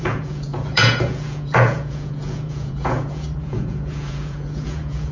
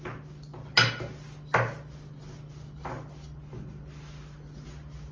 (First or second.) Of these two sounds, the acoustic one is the second